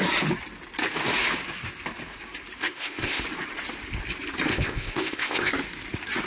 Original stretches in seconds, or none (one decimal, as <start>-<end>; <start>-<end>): 0.0-2.6; 3.2-4.5; 5.5-6.3